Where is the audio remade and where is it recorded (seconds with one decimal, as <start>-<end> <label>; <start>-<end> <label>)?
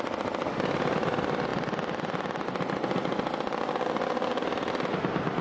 0.0-5.4 recorded